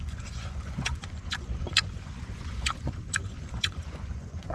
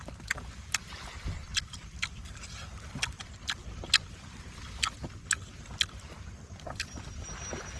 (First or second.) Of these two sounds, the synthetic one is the first